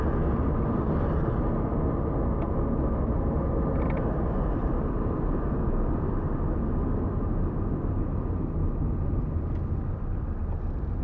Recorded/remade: recorded